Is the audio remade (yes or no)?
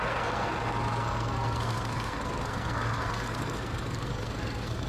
yes